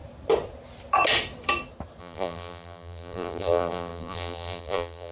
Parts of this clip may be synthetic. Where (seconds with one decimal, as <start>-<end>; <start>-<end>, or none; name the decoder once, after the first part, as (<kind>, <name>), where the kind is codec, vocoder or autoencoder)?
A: 2.0-5.1 (vocoder, BigVGAN v2)